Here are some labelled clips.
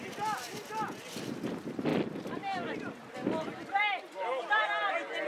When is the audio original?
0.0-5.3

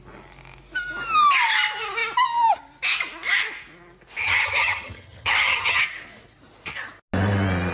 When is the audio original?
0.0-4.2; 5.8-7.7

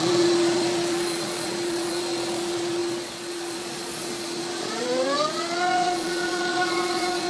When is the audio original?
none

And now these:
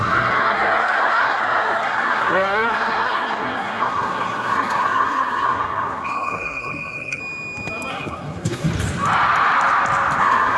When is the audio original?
7.2-7.9; 8.7-10.2

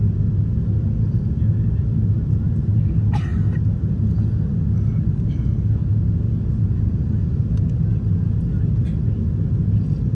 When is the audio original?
0.0-10.1

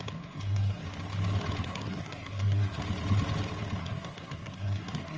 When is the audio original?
0.8-1.6; 2.8-3.8

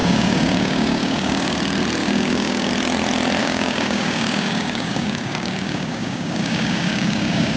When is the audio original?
1.6-2.0; 2.7-3.4